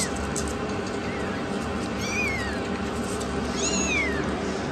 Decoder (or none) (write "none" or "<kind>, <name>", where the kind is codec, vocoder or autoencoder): none